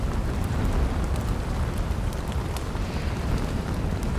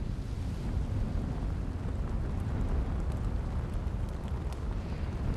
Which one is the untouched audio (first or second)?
second